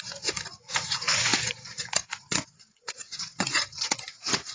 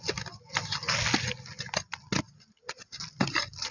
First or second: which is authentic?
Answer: second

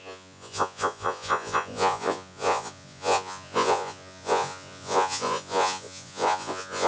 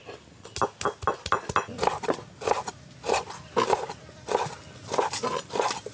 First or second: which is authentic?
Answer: second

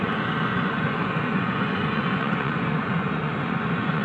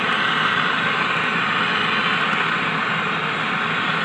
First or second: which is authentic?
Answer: second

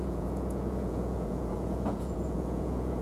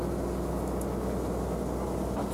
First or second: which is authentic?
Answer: second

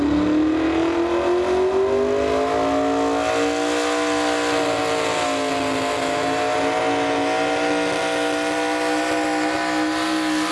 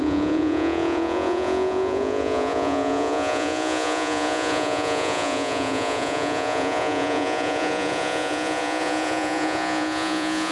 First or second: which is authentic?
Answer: first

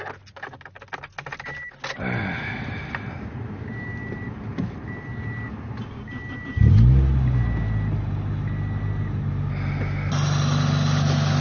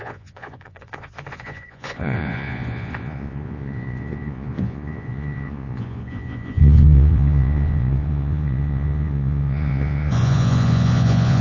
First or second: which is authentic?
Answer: first